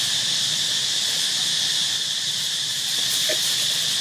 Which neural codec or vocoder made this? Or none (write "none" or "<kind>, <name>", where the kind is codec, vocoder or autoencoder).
none